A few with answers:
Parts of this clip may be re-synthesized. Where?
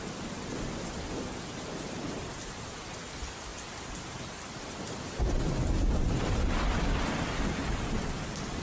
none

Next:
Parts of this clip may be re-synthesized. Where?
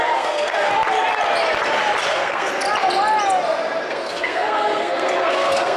0.0-0.7 (codec, SNAC); 2.1-2.5; 3.9-5.8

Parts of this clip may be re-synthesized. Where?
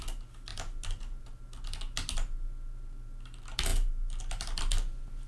none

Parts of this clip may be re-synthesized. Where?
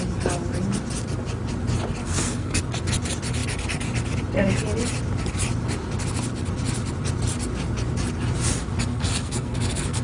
2.0-2.6 (codec, SNAC); 8.9-10.0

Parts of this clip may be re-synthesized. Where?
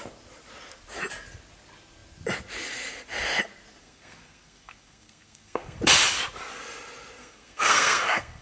3.8-5.8 (codec, SNAC); 7.2-8.4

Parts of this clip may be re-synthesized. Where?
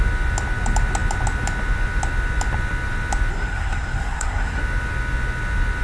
3.3-4.6 (codec, SNAC)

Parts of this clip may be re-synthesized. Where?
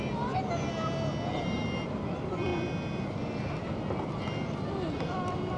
none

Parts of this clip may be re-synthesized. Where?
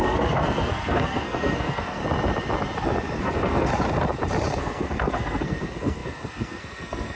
0.0-2.0 (codec, SNAC); 3.2-3.7; 4.6-7.2